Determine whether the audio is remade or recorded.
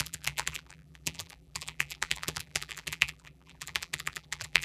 remade